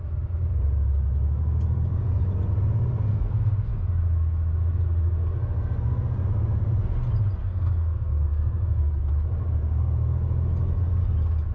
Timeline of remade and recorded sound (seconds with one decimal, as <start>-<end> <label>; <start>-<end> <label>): 0.0-3.1 recorded; 3.1-3.7 remade; 3.7-7.4 recorded; 7.4-8.9 remade; 8.9-11.5 recorded